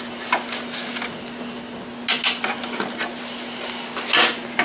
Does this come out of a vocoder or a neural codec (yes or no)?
no